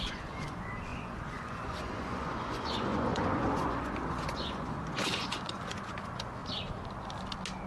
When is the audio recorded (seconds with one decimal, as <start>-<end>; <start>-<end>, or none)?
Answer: 6.4-7.7